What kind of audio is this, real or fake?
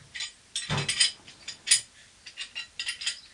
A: real